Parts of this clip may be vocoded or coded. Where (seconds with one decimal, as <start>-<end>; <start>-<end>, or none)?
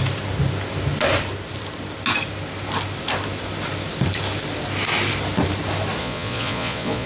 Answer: 6.0-7.1